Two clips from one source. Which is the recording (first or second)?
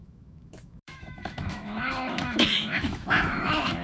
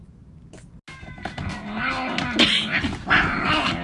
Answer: second